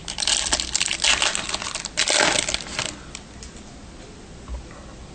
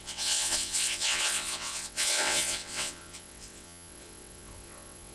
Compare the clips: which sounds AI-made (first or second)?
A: second